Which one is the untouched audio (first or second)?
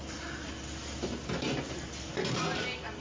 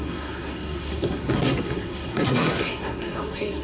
first